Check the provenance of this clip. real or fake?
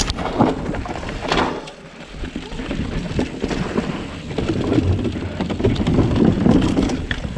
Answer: real